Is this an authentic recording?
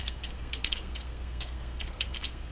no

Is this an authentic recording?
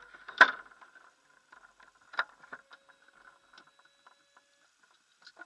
yes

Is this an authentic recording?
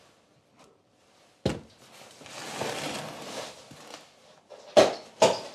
yes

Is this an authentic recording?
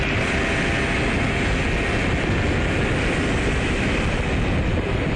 yes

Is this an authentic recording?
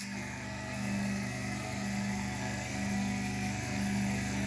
no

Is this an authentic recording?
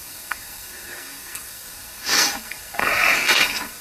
no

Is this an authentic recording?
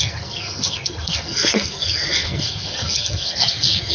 no